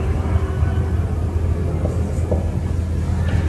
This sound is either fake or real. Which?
real